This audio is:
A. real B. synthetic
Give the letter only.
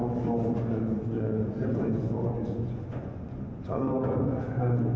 B